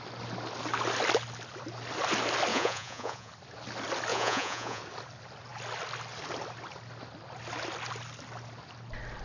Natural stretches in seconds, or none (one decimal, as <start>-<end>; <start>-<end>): 0.0-2.5; 3.3-4.1; 4.8-9.2